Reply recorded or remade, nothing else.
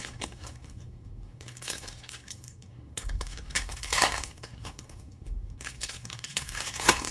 remade